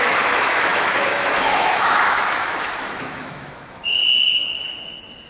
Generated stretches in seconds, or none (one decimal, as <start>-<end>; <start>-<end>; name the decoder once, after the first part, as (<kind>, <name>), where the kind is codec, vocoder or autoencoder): 0.0-4.0 (autoencoder, DAC-VAE)